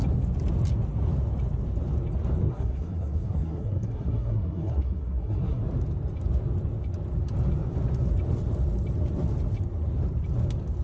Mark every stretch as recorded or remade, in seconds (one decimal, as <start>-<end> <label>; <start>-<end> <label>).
0.0-2.4 recorded; 2.4-5.6 remade; 5.6-10.8 recorded